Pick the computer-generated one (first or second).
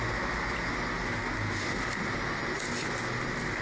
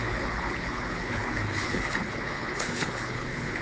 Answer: second